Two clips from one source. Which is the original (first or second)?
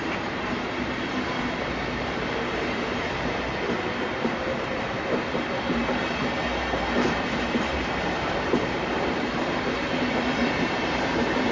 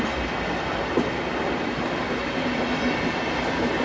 second